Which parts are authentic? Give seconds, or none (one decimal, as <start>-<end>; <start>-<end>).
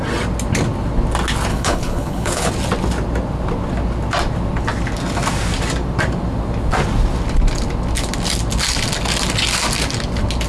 0.0-1.5; 2.5-10.5